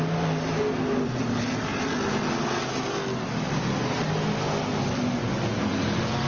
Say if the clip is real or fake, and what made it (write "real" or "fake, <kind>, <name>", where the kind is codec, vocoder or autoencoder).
real